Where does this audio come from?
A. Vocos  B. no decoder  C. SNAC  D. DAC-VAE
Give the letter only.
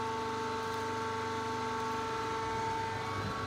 B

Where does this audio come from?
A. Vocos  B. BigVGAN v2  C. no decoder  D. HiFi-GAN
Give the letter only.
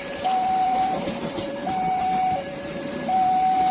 B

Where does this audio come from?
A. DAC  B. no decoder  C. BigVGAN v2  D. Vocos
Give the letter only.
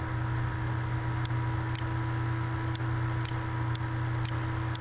B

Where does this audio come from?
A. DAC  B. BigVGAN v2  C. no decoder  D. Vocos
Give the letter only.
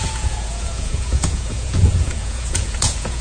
D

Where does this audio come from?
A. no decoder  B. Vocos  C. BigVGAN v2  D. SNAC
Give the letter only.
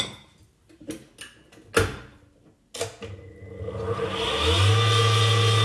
A